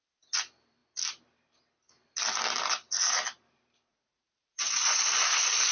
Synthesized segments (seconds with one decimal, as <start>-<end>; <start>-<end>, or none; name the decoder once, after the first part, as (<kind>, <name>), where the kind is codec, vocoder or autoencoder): 3.9-5.0 (vocoder, Vocos)